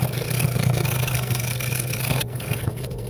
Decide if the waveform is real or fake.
fake